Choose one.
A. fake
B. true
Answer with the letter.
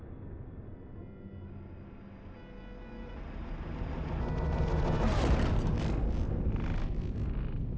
B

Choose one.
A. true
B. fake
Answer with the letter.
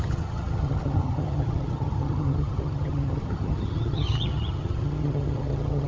B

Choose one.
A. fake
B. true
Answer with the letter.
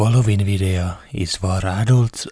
B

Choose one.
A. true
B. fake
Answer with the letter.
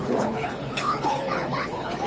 B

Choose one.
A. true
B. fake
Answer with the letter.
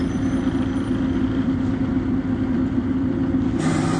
A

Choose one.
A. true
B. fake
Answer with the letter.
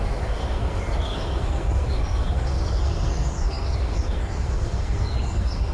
B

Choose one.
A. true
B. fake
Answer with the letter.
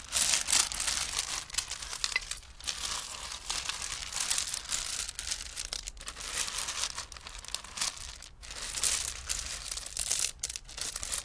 A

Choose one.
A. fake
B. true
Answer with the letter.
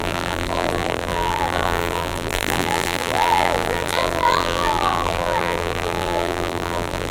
A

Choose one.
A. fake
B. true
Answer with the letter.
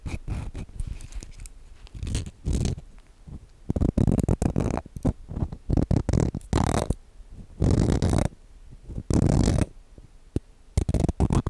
B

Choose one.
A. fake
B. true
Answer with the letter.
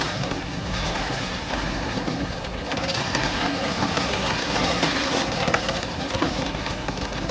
A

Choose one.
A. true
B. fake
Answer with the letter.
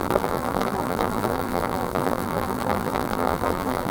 B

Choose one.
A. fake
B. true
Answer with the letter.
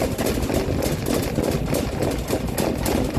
B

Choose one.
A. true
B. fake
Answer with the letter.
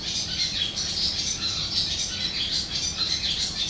A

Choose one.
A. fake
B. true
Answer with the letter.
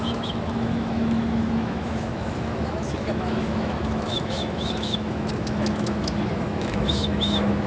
A